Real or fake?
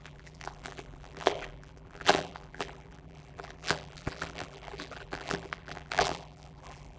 fake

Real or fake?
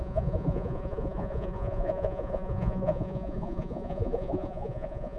fake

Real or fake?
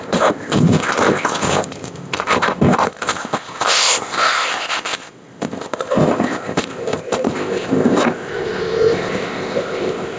fake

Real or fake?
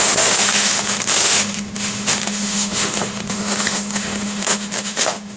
fake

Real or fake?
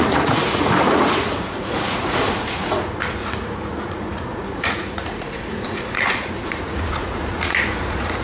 fake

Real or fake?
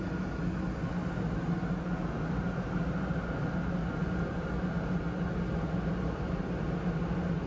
real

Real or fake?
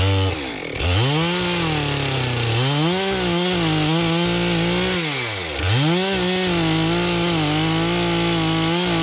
real